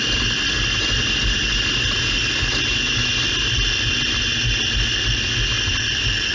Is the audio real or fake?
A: real